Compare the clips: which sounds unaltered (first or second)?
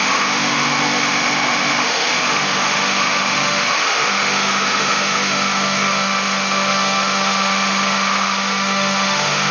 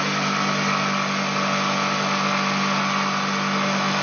second